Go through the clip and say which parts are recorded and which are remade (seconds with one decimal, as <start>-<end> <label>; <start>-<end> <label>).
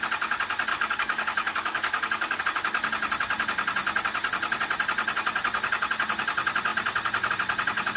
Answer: 0.0-0.7 recorded; 0.7-2.4 remade; 2.4-8.0 recorded